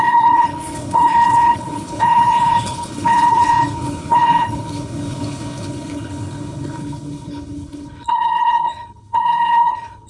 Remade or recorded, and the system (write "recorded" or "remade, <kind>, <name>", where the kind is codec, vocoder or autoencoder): remade, codec, HILCodec